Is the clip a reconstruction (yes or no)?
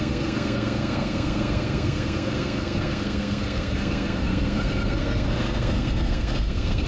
yes